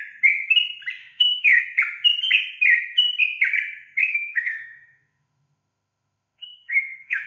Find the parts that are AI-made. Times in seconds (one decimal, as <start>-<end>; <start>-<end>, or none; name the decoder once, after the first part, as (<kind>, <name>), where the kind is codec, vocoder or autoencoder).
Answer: 1.0-1.6 (autoencoder, DAC-VAE); 4.0-7.3